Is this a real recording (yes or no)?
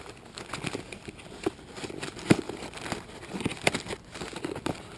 yes